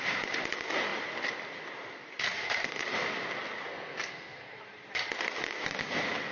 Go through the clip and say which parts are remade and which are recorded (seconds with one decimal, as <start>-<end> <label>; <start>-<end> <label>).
0.0-3.7 recorded; 3.7-4.6 remade; 4.6-6.3 recorded